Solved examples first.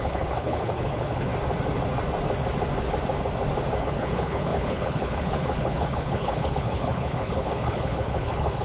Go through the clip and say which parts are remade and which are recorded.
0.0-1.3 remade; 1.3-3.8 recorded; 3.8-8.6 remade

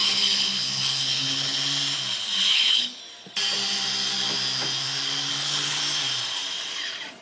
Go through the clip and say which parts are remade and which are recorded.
0.0-1.6 remade; 1.6-2.5 recorded; 2.5-3.0 remade; 3.0-5.3 recorded; 5.3-5.8 remade; 5.8-7.2 recorded